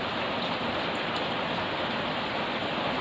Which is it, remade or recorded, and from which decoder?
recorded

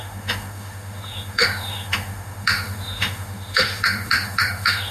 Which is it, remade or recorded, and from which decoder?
remade, autoencoder, DAC-VAE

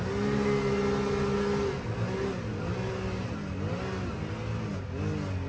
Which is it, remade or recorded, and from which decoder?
recorded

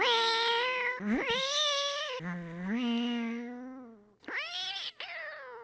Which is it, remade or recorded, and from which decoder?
recorded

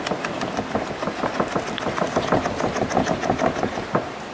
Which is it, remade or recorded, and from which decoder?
recorded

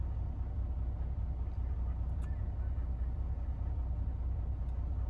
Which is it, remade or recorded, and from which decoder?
recorded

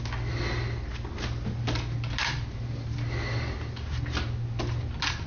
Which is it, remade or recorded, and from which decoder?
recorded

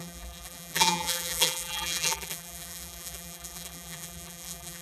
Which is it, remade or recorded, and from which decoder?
remade, vocoder, BigVGAN v2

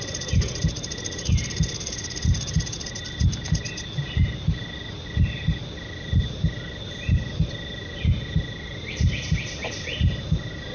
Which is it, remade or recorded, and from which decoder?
recorded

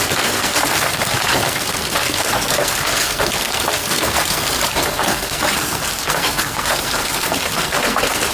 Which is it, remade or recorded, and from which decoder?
remade, codec, SNAC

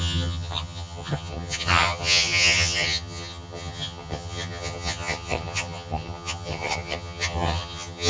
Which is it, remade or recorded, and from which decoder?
remade, vocoder, HiFi-GAN